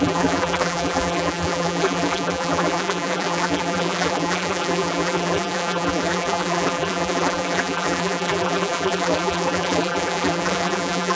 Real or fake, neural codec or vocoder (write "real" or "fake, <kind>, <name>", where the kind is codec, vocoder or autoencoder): fake, vocoder, BigVGAN v2